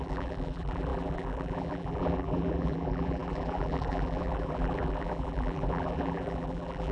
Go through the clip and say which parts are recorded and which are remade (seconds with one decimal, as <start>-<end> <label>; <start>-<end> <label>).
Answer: 0.0-6.9 remade